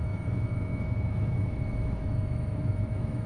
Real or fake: fake